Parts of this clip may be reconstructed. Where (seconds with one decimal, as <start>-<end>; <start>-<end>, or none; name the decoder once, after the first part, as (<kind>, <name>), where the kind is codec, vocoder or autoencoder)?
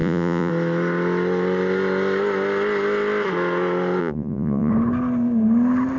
0.0-0.5 (vocoder, Vocos); 4.0-4.7